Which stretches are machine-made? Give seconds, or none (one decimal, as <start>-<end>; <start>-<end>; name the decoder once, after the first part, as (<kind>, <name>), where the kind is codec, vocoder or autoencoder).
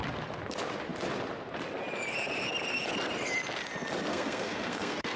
4.1-5.2 (codec, SNAC)